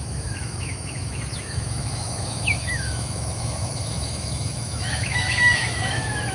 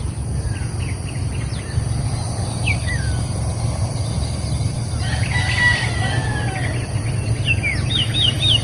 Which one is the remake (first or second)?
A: first